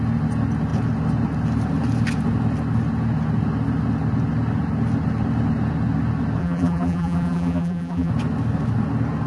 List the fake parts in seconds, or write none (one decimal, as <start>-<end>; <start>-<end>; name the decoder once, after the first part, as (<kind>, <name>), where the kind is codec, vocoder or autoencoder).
6.4-8.1 (vocoder, BigVGAN v2)